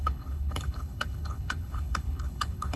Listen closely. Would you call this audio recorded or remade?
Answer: remade